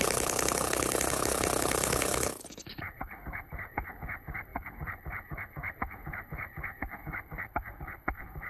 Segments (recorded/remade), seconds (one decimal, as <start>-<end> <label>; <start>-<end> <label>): 0.0-8.5 remade